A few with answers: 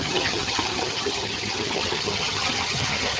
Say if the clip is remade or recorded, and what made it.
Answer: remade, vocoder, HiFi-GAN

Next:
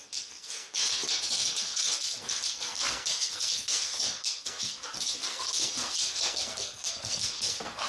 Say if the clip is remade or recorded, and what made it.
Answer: remade, codec, SNAC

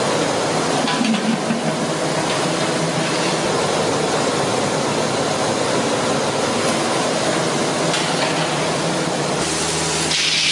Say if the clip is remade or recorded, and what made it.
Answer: recorded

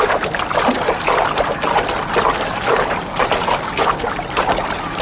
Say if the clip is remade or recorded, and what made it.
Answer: recorded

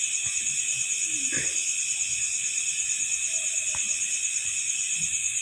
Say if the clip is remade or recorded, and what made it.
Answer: recorded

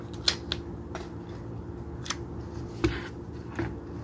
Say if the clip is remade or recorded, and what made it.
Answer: recorded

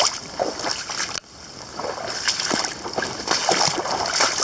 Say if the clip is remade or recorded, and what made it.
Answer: recorded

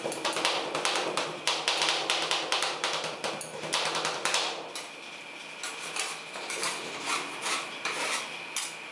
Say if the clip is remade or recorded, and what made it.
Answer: recorded